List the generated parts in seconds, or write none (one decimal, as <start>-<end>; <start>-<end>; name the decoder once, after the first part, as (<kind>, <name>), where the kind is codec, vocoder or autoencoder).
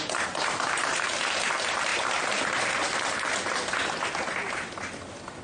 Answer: none